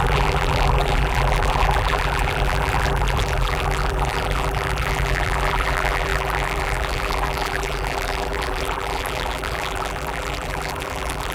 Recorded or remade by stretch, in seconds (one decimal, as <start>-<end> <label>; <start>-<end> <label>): 0.0-11.3 remade